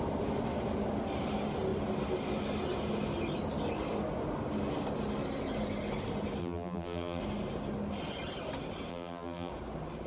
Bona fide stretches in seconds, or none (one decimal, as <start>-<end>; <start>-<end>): 0.0-6.4; 7.2-8.9; 9.5-10.1